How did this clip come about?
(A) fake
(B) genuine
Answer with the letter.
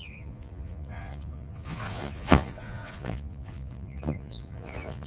A